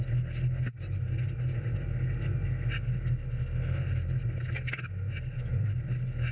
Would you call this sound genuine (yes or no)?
yes